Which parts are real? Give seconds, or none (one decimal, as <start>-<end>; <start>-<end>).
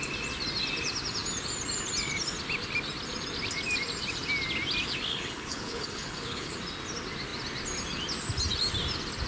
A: 0.0-5.1; 6.5-9.3